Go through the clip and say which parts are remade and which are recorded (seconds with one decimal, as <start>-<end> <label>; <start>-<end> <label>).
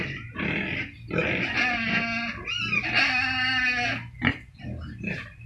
0.0-5.5 recorded